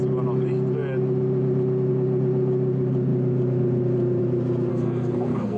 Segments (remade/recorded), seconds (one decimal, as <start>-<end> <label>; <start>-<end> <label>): 0.0-4.7 recorded; 4.7-5.6 remade